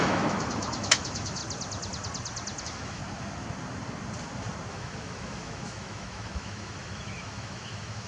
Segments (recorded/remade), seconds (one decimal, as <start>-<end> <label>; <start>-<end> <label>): 0.0-1.4 remade; 1.4-2.6 recorded; 2.6-3.0 remade; 3.0-4.7 recorded; 4.7-8.1 remade